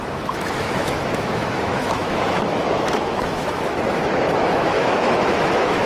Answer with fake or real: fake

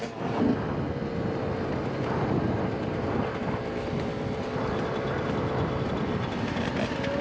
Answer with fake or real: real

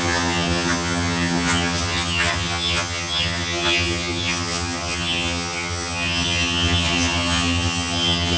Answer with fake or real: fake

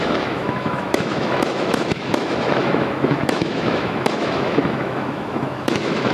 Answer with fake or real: fake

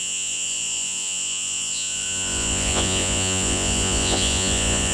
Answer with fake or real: fake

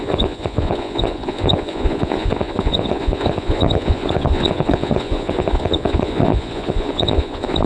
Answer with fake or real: fake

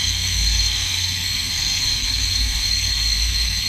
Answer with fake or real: fake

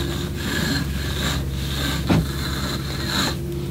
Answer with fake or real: real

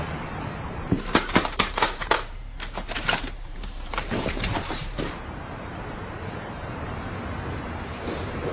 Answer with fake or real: fake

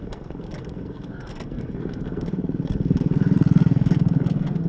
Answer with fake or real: fake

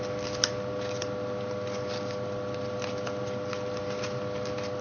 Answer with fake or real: real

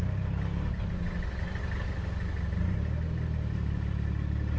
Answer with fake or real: real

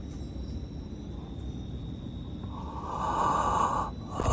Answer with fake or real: real